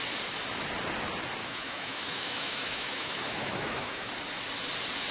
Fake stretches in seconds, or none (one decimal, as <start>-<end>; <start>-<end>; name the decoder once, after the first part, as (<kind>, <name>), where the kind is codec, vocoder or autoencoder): 1.4-4.1 (autoencoder, DAC-VAE)